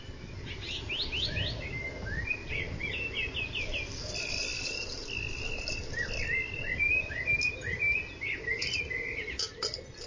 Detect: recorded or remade recorded